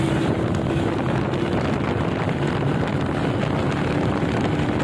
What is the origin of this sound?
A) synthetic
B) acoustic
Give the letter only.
B